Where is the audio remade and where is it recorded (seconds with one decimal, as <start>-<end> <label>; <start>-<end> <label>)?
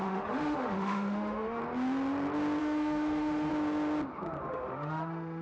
0.0-1.6 remade; 1.6-2.6 recorded; 2.6-3.5 remade; 3.5-4.5 recorded; 4.5-5.4 remade